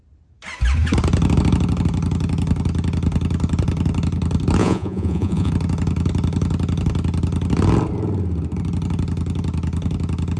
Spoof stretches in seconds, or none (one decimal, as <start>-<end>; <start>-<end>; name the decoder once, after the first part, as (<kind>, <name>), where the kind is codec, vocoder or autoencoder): 4.6-5.5 (vocoder, Vocos)